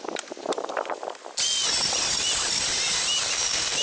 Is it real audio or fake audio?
real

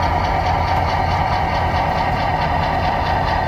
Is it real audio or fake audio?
real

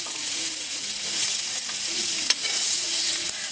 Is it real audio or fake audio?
fake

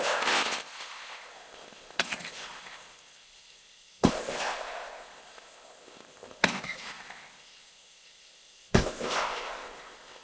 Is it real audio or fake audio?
fake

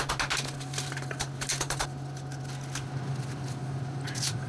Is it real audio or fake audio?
real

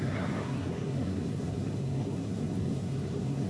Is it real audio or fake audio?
fake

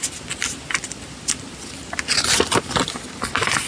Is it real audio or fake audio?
real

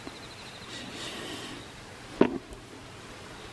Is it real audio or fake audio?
real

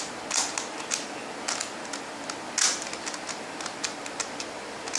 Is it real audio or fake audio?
real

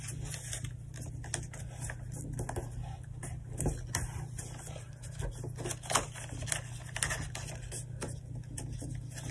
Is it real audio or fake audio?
real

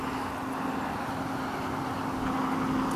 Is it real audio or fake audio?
real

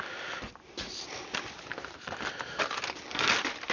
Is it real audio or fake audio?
real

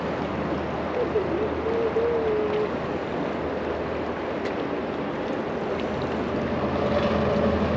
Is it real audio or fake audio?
real